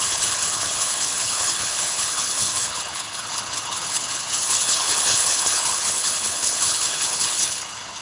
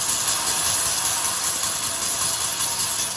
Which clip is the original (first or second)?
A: second